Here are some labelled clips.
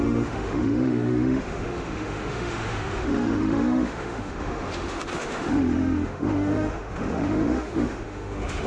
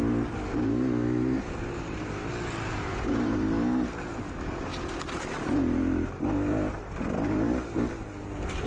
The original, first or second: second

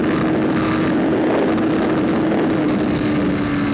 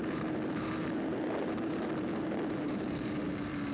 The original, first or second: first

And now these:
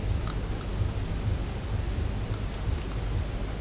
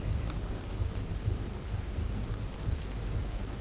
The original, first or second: first